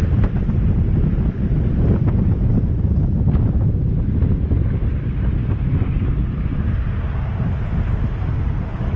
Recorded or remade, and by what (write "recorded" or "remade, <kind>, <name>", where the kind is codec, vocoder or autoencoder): recorded